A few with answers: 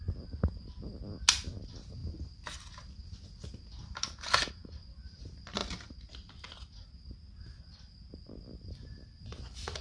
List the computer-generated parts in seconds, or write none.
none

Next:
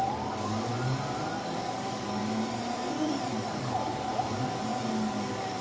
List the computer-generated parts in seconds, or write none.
0.0-0.7 (codec, DAC); 1.3-2.2; 3.6-4.1; 4.9-5.6

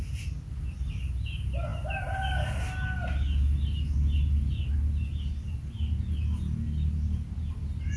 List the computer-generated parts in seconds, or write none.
none

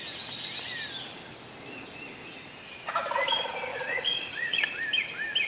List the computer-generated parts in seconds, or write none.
3.7-4.8 (vocoder, Vocos)

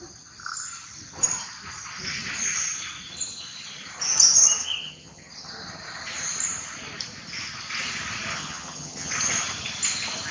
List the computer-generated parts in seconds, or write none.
4.6-5.3 (vocoder, HiFi-GAN); 8.3-9.1